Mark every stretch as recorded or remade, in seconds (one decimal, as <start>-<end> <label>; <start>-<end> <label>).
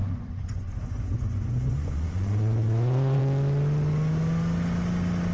0.0-3.2 remade; 3.2-5.3 recorded